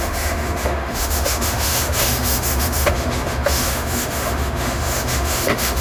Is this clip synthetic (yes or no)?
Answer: yes